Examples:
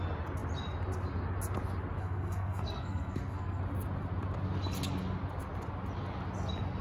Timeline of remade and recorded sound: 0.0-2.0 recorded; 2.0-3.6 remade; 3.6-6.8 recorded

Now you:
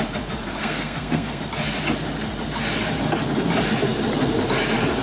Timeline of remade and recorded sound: 0.0-0.6 recorded; 0.6-1.4 remade; 1.4-5.0 recorded

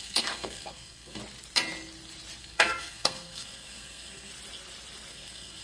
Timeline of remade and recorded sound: 0.0-1.2 remade; 1.2-2.4 recorded; 2.4-4.3 remade; 4.3-5.1 recorded; 5.1-5.6 remade

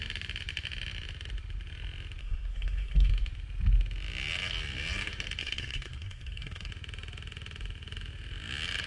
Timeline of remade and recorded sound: 0.0-2.2 recorded; 2.2-3.1 remade; 3.1-5.4 recorded; 5.4-6.7 remade; 6.7-8.9 recorded

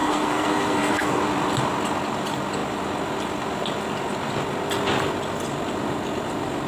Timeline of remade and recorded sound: 0.0-1.2 remade; 1.2-6.7 recorded

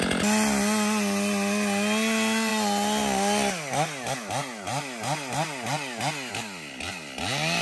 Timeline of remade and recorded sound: 0.0-7.6 recorded

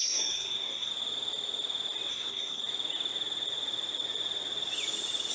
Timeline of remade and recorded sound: 0.0-0.9 remade; 0.9-2.1 recorded; 2.1-2.6 remade; 2.6-5.3 recorded

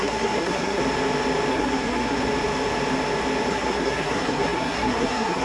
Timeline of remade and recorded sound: 0.0-0.8 remade; 0.8-1.5 recorded; 1.5-2.2 remade; 2.2-3.5 recorded; 3.5-5.4 remade